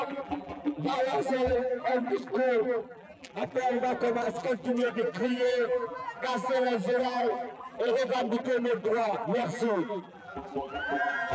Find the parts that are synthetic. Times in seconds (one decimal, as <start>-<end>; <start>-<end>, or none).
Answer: 0.0-3.8; 4.3-11.3